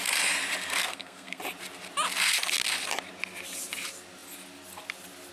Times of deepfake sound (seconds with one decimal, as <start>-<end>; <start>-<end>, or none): 0.8-1.4